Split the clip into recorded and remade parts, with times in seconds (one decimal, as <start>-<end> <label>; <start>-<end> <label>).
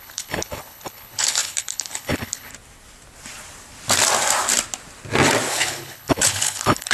0.0-2.5 remade; 2.5-5.5 recorded; 5.5-6.9 remade